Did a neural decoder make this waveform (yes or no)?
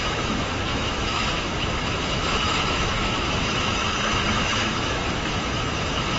yes